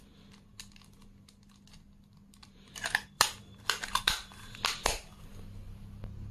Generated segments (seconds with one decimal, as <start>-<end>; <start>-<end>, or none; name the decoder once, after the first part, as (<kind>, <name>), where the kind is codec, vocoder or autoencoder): 2.4-4.4 (vocoder, BigVGAN v2)